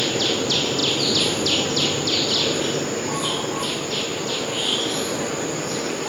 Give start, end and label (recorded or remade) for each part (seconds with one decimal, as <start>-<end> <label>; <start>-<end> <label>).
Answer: 0.0-6.1 recorded